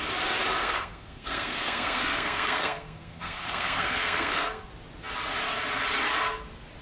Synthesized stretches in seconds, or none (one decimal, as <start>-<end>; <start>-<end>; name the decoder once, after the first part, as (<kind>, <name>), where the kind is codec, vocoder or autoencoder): 0.6-4.7 (codec, SNAC)